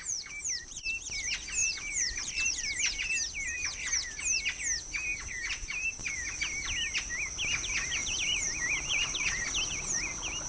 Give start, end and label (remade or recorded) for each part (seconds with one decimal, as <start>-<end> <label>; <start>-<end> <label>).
0.0-0.9 remade; 0.9-1.6 recorded; 1.6-3.1 remade; 3.1-5.1 recorded; 5.1-6.1 remade; 6.1-8.0 recorded; 8.0-9.5 remade; 9.5-10.5 recorded